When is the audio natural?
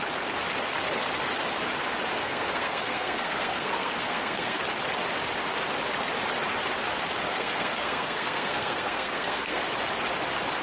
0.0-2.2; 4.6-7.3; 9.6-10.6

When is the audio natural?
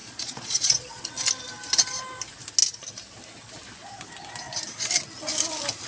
1.1-5.9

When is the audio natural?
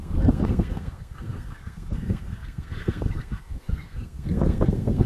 none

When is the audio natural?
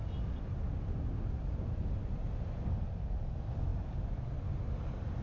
0.0-5.2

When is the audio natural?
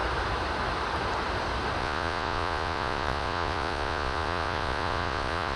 0.0-1.8